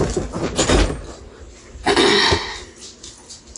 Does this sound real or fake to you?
real